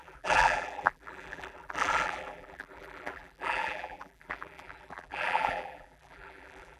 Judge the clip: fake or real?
fake